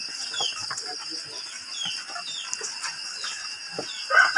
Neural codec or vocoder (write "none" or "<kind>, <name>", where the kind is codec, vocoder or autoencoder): none